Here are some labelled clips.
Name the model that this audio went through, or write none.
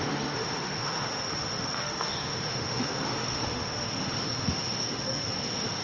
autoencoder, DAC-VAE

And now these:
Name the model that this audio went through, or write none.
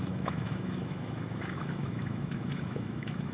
autoencoder, DAC-VAE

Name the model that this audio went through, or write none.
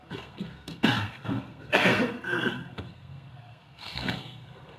codec, SNAC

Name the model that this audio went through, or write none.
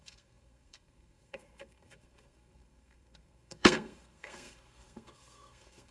codec, SNAC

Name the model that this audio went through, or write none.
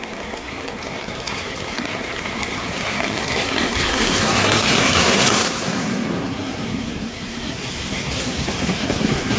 codec, SNAC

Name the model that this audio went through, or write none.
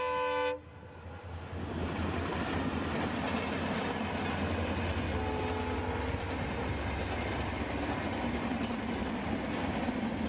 none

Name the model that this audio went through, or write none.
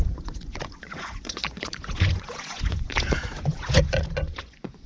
vocoder, Vocos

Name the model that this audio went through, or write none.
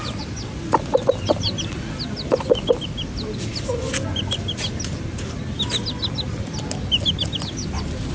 none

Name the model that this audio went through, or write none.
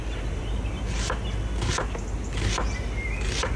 none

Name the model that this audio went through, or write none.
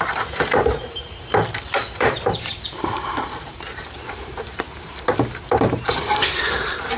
vocoder, BigVGAN v2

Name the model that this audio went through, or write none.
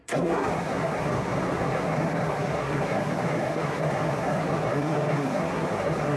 codec, SNAC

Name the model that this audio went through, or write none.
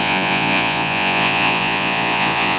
vocoder, Vocos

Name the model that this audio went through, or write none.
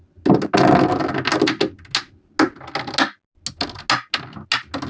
none